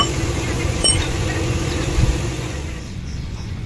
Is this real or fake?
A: fake